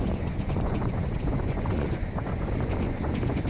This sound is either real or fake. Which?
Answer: fake